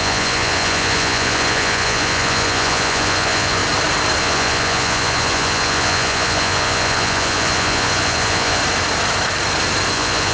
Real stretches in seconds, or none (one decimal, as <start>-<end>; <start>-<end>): 3.6-4.2; 8.6-9.9